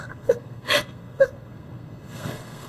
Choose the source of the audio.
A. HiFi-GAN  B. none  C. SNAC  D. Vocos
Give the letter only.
C